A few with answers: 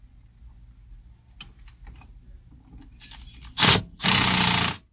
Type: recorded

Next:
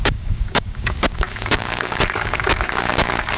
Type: remade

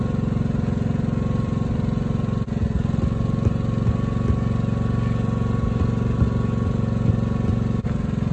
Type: recorded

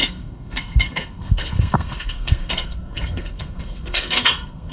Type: remade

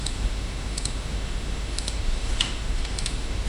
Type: remade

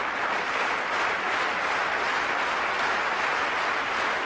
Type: recorded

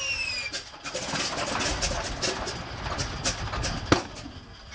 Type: recorded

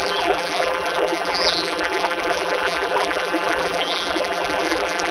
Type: remade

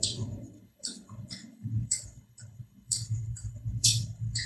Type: remade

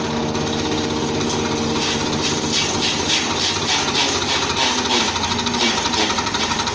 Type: recorded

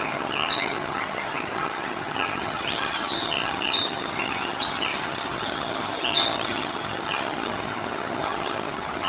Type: remade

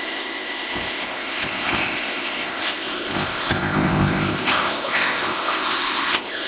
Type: remade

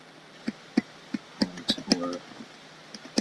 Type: recorded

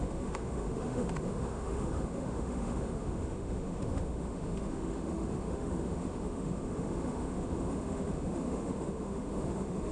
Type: remade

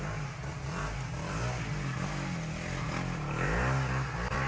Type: recorded